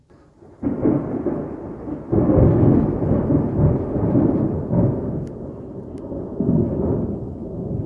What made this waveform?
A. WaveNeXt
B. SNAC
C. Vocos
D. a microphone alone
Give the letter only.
D